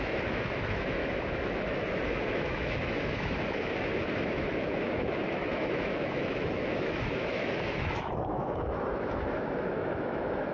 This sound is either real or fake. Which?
fake